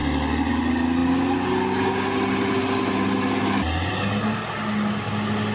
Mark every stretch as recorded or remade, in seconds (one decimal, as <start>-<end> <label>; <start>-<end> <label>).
0.0-5.5 recorded